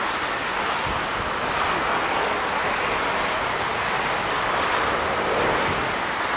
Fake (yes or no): no